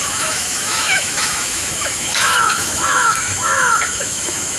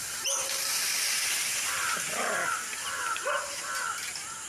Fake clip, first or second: first